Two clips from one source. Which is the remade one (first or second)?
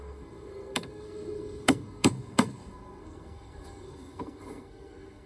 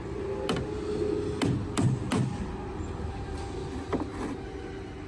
first